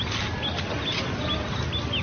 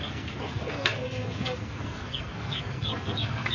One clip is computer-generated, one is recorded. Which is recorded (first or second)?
first